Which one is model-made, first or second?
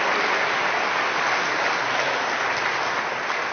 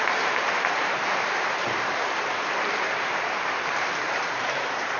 second